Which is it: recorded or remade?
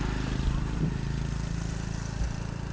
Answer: recorded